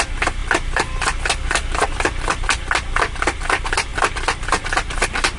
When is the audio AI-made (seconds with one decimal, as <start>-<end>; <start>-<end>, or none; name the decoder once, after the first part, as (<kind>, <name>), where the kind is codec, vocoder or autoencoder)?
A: none